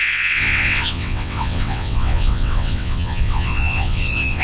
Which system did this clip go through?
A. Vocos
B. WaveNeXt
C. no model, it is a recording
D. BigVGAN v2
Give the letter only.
B